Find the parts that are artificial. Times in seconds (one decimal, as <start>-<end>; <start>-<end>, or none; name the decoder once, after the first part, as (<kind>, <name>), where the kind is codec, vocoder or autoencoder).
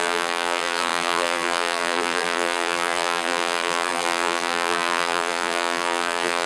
0.0-6.5 (vocoder, BigVGAN v2)